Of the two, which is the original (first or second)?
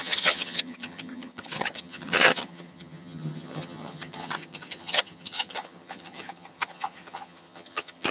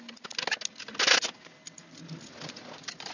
second